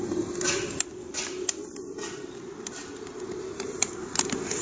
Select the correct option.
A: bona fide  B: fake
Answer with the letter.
A